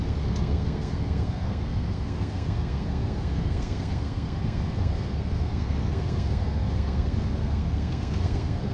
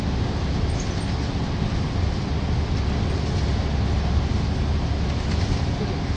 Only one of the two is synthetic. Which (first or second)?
first